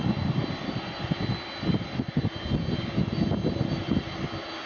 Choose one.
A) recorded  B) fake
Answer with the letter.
A